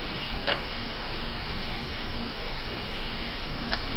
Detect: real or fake fake